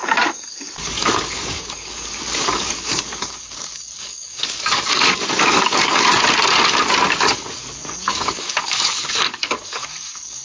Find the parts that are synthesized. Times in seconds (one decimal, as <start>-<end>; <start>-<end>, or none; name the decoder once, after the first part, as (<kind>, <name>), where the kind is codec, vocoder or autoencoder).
0.0-6.1 (codec, DAC); 7.1-10.4